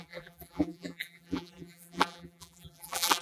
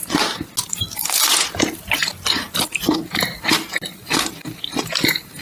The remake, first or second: first